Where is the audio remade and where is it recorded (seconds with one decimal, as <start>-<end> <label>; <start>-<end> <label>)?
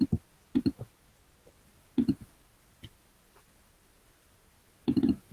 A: 0.0-5.3 recorded